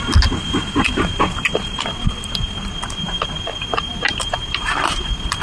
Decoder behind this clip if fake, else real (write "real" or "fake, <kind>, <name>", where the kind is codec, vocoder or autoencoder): fake, vocoder, BigVGAN v2